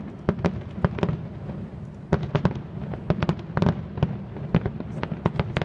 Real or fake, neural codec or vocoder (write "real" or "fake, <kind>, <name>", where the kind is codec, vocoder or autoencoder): real